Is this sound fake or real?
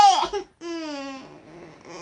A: real